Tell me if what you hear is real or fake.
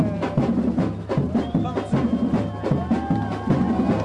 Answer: real